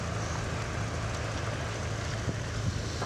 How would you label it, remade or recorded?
recorded